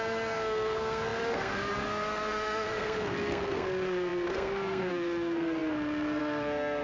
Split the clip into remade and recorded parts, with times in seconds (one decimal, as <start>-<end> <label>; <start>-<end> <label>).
0.0-6.8 remade